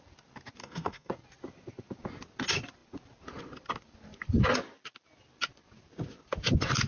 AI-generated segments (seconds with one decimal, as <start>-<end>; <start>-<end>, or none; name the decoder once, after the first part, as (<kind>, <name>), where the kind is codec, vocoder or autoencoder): 0.6-1.1 (codec, SNAC)